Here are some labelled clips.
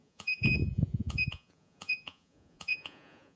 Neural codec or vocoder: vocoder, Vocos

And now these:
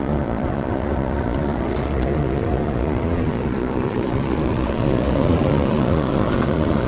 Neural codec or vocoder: vocoder, Vocos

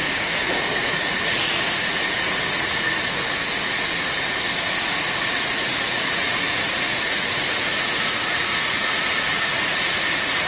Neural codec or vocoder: vocoder, Vocos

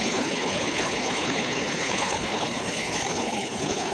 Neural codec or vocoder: codec, HILCodec